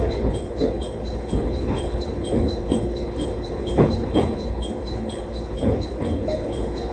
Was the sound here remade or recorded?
remade